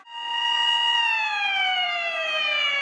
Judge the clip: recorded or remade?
remade